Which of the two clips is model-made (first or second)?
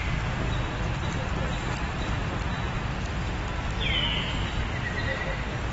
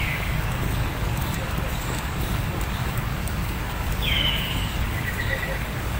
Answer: second